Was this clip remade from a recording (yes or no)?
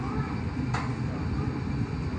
no